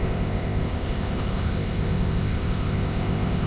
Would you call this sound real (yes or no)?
no